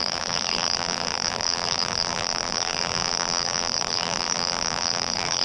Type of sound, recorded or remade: remade